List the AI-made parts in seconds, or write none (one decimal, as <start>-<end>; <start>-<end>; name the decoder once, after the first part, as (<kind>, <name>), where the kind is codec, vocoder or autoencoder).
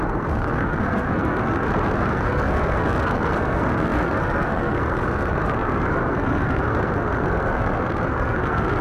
0.0-8.8 (codec, SNAC)